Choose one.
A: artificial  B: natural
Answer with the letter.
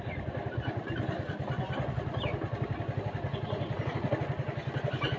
B